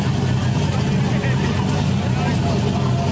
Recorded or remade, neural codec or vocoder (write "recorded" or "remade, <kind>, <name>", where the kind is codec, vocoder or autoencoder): recorded